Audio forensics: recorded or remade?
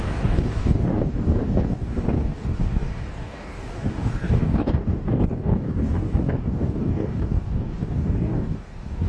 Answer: remade